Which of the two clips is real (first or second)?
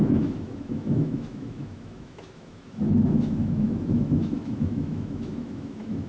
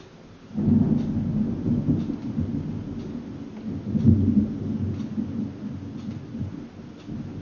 second